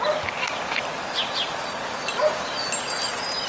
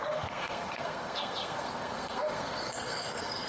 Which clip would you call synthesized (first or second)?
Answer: second